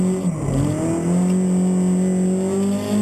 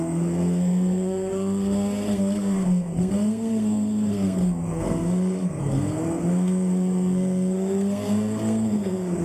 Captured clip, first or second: first